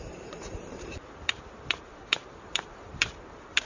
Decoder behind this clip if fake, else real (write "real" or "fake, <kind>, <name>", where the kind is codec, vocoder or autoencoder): fake, vocoder, BigVGAN v2